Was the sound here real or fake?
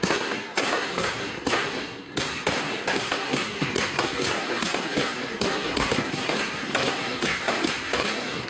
fake